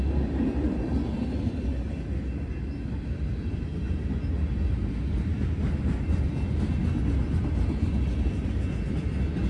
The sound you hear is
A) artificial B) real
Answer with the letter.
B